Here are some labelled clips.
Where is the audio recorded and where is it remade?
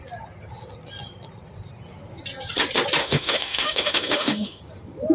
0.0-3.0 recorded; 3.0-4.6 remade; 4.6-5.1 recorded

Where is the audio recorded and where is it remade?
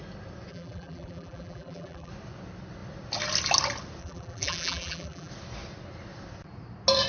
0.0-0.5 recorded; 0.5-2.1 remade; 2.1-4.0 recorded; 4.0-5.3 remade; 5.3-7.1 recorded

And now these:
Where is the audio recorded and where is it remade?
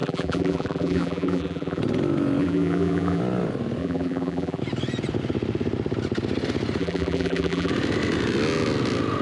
0.0-1.8 remade; 1.8-2.4 recorded; 2.4-3.2 remade; 3.2-3.8 recorded; 3.8-4.6 remade; 4.6-6.8 recorded; 6.8-7.7 remade; 7.7-9.2 recorded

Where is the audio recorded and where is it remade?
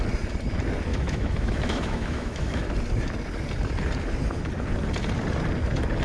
0.0-0.9 recorded; 0.9-2.7 remade; 2.7-6.0 recorded